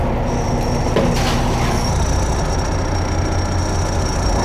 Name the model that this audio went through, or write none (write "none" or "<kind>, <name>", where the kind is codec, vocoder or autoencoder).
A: none